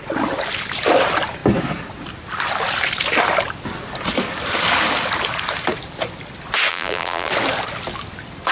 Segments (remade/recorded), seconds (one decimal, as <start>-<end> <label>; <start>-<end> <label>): 0.0-6.7 recorded; 6.7-7.3 remade; 7.3-8.5 recorded